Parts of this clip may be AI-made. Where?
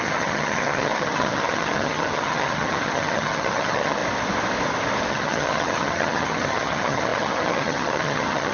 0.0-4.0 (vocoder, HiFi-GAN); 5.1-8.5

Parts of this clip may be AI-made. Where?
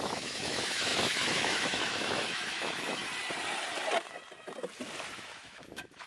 0.0-3.0 (autoencoder, DAC-VAE); 5.1-6.1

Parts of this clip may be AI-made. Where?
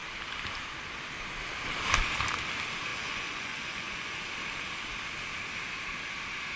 2.9-4.2 (vocoder, Vocos)